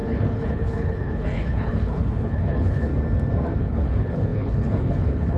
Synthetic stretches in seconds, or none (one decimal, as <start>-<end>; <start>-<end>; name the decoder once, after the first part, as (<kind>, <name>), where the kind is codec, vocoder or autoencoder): 0.0-2.9 (codec, HILCodec); 3.6-5.4